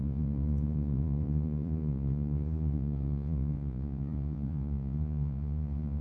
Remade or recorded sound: remade